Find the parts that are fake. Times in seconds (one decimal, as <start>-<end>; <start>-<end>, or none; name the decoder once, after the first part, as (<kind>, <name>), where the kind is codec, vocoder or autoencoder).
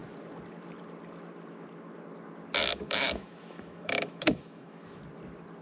2.6-5.0 (autoencoder, DAC-VAE)